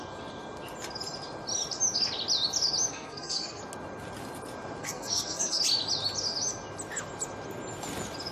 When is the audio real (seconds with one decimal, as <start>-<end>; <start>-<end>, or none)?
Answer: 0.0-2.9; 3.6-4.8; 5.6-8.3